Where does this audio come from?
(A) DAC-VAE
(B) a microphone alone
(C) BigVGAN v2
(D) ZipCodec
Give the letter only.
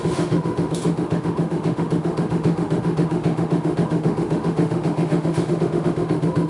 A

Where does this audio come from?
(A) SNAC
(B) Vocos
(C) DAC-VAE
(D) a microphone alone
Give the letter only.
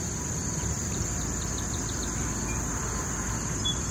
D